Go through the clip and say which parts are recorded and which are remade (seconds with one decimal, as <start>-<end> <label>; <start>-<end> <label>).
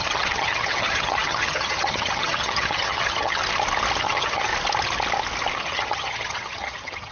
0.0-3.4 remade; 3.4-4.0 recorded; 4.0-4.5 remade; 4.5-5.6 recorded; 5.6-7.1 remade